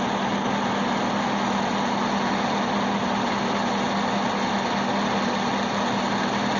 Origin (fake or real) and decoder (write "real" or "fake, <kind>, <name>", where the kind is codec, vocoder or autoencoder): real